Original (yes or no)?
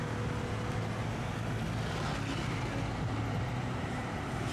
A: yes